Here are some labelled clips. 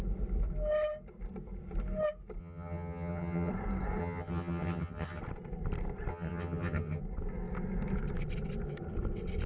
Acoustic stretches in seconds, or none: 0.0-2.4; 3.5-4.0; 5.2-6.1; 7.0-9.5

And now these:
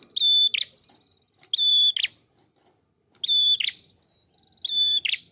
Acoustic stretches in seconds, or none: 0.0-5.3

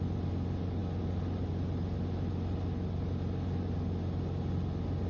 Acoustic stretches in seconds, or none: 0.0-5.1